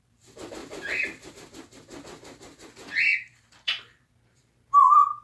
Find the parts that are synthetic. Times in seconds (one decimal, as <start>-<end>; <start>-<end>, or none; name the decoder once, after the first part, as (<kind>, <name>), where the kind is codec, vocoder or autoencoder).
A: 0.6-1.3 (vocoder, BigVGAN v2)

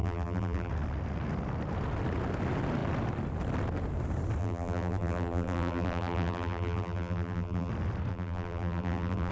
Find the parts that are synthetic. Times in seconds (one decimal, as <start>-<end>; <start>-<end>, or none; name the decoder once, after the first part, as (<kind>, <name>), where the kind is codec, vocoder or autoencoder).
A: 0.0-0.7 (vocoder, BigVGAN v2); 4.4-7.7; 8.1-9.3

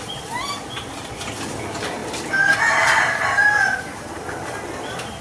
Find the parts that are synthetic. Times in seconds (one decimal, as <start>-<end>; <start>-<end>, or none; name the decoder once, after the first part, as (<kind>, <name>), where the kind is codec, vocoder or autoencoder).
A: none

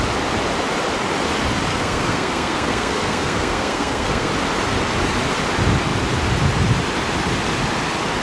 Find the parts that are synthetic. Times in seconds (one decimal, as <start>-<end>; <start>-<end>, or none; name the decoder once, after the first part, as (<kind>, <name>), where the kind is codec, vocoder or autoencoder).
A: 1.7-4.3 (codec, SNAC)

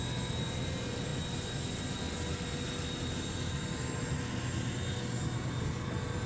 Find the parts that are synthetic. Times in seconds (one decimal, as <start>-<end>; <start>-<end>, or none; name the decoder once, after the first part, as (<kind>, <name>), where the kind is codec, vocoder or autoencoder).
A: none

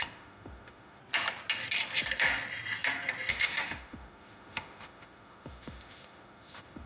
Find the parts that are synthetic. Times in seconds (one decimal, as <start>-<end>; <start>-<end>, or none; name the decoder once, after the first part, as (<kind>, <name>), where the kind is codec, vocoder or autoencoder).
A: 0.0-1.0 (autoencoder, DAC-VAE); 3.3-6.9